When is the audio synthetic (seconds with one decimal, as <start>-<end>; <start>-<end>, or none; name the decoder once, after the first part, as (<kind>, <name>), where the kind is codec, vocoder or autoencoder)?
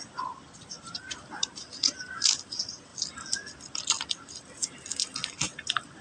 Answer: none